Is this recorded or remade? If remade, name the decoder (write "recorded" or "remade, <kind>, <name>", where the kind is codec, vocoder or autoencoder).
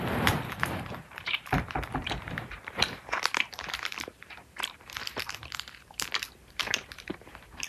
remade, vocoder, BigVGAN v2